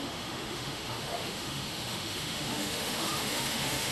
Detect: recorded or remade remade